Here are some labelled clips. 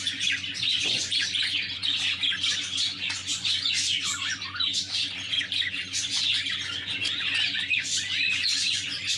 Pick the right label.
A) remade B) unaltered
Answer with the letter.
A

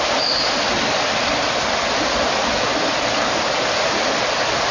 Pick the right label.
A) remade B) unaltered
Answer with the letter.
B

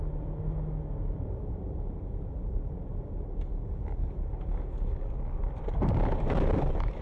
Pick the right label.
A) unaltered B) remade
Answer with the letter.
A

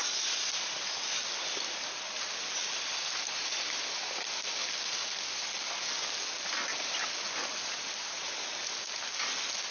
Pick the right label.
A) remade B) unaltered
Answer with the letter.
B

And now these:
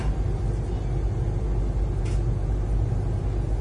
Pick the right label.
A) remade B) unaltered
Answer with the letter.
B